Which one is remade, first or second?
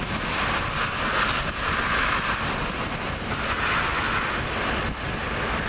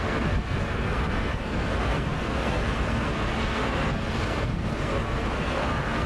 second